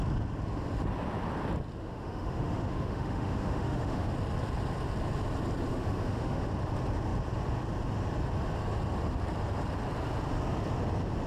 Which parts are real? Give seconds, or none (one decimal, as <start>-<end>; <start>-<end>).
0.0-1.8; 4.1-5.7; 6.5-11.3